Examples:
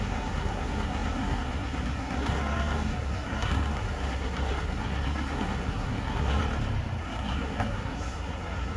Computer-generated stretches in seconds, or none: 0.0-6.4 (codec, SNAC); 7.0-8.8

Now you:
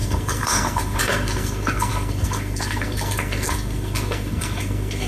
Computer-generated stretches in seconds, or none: 0.0-5.1 (codec, SNAC)

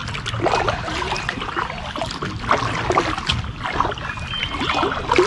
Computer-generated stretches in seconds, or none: none

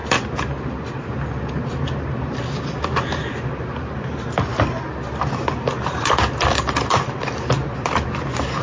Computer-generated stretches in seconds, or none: none